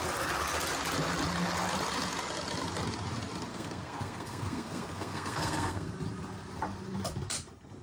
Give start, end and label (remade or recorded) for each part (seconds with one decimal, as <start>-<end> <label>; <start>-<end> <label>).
0.0-3.5 recorded; 3.5-5.9 remade; 5.9-7.8 recorded